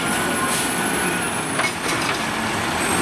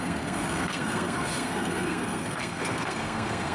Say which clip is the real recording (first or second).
first